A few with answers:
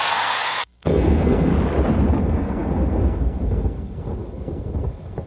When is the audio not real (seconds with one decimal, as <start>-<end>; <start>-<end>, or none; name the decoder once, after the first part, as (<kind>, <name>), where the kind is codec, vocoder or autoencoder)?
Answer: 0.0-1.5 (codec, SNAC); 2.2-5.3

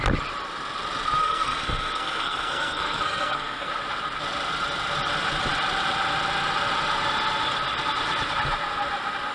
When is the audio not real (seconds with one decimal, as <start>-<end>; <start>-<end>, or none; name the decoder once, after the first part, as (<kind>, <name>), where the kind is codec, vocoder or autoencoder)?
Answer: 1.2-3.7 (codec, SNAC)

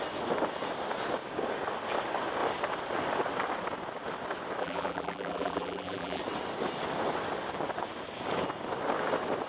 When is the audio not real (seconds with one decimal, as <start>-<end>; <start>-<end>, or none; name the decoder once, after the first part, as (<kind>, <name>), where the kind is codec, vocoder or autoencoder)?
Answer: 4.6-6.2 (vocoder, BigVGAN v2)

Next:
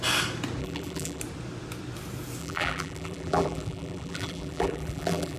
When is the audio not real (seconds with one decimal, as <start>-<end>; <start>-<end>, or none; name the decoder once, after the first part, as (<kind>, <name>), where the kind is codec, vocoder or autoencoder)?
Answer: 0.6-1.2 (vocoder, BigVGAN v2); 2.4-5.4

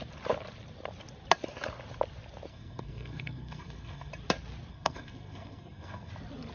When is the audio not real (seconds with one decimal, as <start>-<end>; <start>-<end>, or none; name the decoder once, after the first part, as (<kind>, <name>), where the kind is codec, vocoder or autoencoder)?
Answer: 2.5-4.1 (codec, SNAC); 4.7-6.1

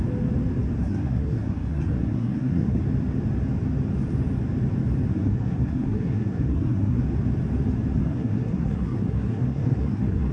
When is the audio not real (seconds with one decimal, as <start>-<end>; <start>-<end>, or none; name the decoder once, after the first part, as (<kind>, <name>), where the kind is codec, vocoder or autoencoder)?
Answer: 0.8-2.8 (codec, SNAC); 5.1-7.0; 8.0-10.3